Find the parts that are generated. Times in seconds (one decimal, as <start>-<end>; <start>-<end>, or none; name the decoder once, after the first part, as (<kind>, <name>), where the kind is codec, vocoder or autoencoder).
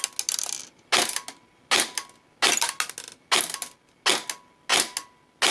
none